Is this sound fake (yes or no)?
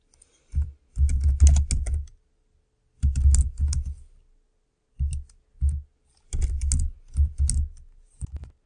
no